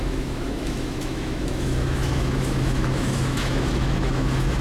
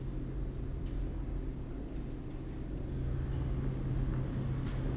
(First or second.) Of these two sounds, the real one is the second